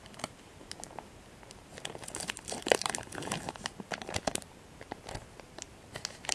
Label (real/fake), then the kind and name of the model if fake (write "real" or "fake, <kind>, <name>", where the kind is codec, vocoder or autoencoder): fake, vocoder, BigVGAN v2